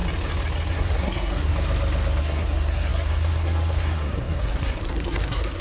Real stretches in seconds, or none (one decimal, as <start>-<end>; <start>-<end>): 0.0-0.7; 1.5-2.2